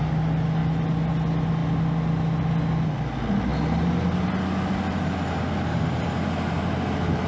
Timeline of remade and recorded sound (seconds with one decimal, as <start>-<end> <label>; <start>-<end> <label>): 0.0-7.3 recorded

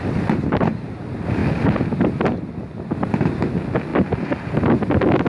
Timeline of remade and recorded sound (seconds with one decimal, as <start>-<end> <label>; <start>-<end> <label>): 0.0-5.3 recorded

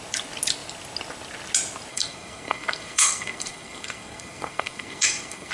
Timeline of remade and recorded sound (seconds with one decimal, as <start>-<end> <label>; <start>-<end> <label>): 0.0-1.9 recorded; 1.9-5.5 remade

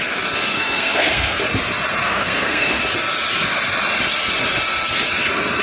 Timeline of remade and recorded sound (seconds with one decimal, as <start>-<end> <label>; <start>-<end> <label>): 0.0-0.5 recorded; 0.5-1.4 remade; 1.4-2.0 recorded; 2.0-2.8 remade; 2.8-5.6 recorded

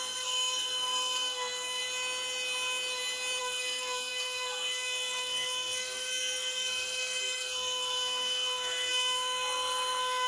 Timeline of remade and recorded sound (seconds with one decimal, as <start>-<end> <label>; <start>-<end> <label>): 0.0-1.8 remade; 1.8-3.4 recorded; 3.4-10.3 remade